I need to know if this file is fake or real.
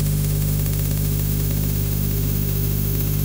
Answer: fake